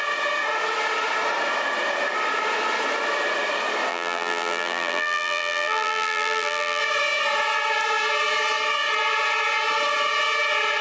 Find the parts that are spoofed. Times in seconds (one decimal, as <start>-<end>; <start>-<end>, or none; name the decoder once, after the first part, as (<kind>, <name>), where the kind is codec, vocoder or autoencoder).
3.9-6.8 (vocoder, BigVGAN v2)